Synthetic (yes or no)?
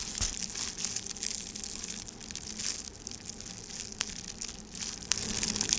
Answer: no